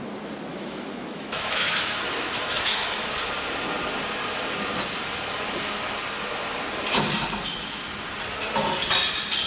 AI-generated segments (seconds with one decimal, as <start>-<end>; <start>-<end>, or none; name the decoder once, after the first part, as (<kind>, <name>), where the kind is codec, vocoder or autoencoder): 0.5-2.9 (autoencoder, DAC-VAE)